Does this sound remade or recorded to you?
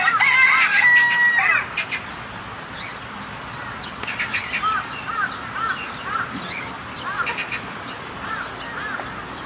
recorded